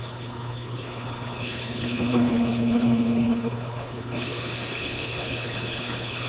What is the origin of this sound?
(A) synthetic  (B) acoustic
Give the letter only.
A